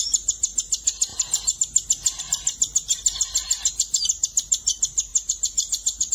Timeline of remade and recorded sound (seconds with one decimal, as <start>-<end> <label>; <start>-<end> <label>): 0.0-6.1 remade